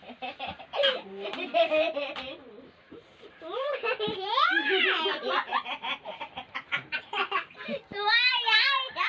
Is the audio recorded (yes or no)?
no